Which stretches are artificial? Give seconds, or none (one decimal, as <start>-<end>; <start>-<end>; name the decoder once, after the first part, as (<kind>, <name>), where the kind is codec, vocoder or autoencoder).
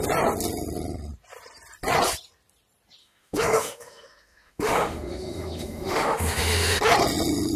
3.0-6.8 (autoencoder, DAC-VAE)